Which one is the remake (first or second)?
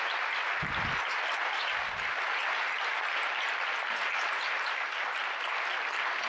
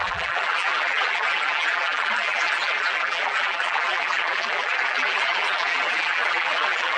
second